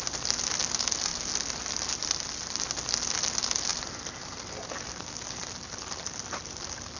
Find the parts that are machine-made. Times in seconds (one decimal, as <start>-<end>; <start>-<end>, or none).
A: none